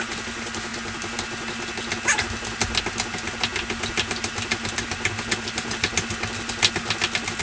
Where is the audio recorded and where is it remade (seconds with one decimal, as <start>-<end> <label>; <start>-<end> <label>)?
0.0-7.4 recorded